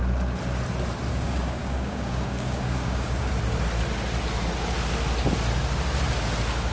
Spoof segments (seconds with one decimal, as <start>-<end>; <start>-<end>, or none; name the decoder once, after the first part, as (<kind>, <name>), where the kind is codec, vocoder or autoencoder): 1.1-3.3 (codec, DAC)